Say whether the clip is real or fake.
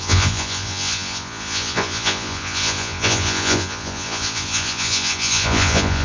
fake